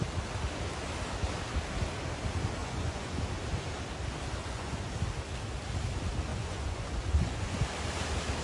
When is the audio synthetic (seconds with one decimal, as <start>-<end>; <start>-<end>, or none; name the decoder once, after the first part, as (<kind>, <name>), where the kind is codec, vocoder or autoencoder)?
2.6-3.2 (vocoder, Vocos); 4.4-4.9; 6.3-7.6